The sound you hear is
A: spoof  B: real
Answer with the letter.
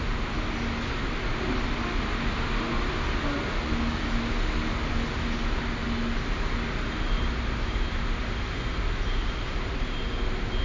B